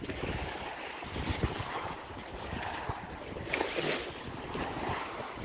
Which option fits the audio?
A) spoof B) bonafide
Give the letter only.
B